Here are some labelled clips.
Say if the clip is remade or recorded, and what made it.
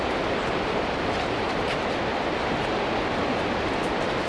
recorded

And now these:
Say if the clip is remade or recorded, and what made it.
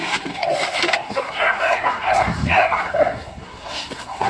remade, codec, SNAC